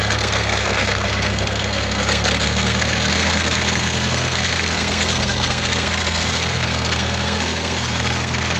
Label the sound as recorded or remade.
remade